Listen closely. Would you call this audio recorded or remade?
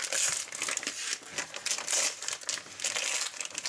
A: recorded